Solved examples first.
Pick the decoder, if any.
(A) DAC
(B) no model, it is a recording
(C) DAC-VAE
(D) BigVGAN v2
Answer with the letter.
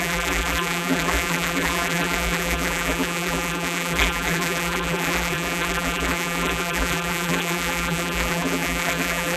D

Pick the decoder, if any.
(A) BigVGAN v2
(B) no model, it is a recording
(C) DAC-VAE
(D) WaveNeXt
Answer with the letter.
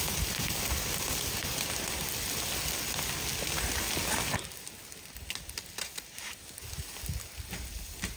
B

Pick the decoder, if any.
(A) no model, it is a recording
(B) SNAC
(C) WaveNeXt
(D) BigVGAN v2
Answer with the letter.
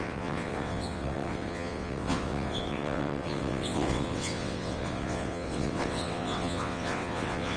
C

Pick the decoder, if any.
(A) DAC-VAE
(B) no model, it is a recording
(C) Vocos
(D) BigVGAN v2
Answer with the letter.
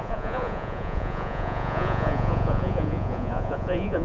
C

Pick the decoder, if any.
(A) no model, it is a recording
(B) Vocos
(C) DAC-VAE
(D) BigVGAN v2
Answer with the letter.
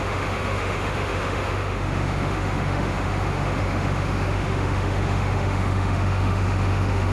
C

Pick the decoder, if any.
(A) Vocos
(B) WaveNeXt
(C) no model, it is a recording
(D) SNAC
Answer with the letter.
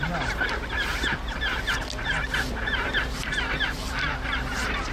C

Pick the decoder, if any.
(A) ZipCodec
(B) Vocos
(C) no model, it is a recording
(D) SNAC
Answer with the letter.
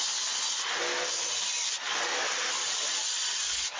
C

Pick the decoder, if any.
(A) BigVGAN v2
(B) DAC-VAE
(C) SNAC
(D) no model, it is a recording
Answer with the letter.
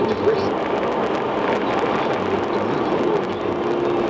D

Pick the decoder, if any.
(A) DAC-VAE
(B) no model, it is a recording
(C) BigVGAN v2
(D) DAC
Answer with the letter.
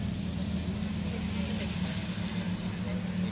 B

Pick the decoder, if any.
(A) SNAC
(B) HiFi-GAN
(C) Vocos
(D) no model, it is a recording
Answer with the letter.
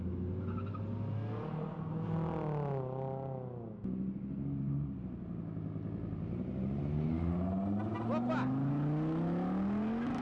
D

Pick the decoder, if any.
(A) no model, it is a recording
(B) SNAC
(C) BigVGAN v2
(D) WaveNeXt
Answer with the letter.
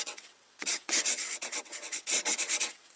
D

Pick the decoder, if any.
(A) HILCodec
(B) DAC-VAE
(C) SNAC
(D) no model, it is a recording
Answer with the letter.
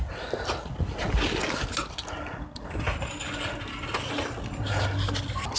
D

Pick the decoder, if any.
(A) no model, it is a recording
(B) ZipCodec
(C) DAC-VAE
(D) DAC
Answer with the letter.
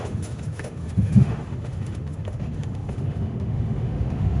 C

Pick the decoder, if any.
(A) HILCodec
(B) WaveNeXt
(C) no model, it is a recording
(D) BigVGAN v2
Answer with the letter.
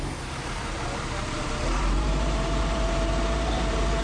D